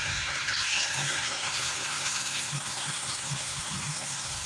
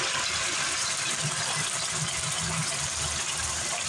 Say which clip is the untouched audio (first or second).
second